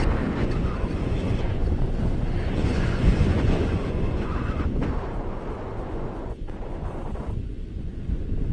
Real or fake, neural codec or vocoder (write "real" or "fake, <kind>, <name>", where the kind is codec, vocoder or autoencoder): fake, vocoder, Vocos